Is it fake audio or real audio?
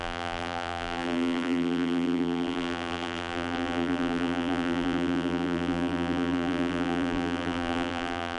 fake